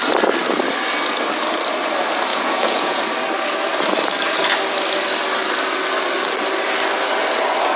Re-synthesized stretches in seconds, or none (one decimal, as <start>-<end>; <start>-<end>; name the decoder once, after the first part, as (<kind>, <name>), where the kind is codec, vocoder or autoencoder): 2.3-3.0 (vocoder, Vocos)